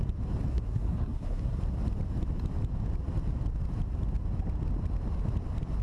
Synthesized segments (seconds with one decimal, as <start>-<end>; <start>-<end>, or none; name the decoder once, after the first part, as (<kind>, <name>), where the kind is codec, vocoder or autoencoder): 0.5-1.6 (codec, SNAC)